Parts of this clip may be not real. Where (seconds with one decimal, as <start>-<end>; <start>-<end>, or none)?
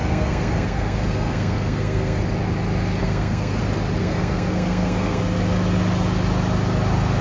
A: 0.0-2.2; 3.0-3.6; 4.0-5.2